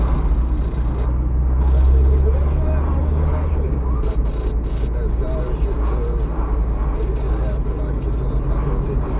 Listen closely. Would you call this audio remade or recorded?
recorded